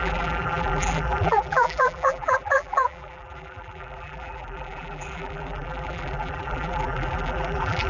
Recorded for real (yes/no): no